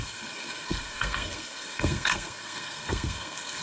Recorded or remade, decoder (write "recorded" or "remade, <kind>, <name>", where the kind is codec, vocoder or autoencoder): remade, codec, SNAC